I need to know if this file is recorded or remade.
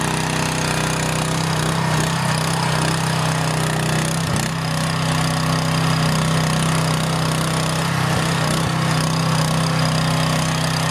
recorded